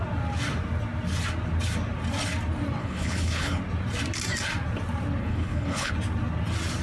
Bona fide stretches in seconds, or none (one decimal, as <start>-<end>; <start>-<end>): 0.0-2.8; 3.6-5.2; 5.9-6.8